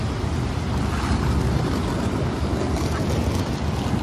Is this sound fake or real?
real